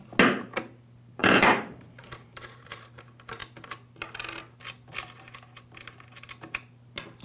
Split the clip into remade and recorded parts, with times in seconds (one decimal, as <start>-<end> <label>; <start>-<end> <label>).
0.0-1.2 recorded; 1.2-3.0 remade; 3.0-7.2 recorded